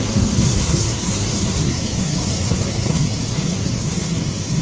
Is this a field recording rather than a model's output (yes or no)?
no